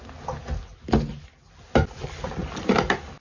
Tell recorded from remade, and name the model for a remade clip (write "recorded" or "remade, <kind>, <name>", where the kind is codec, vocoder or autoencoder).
recorded